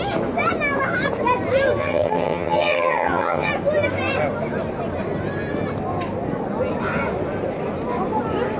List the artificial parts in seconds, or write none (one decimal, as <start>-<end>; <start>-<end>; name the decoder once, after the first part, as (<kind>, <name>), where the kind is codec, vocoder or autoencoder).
1.8-3.5 (vocoder, HiFi-GAN)